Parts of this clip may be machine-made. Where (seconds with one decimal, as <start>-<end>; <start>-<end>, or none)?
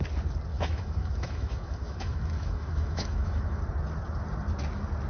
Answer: 0.5-3.6